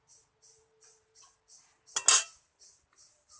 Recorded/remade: recorded